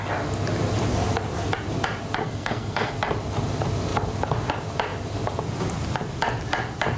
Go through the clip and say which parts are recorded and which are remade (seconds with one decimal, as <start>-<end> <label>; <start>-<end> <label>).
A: 0.0-2.2 recorded; 2.2-2.9 remade; 2.9-7.0 recorded